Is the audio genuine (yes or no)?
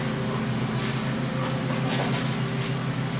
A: yes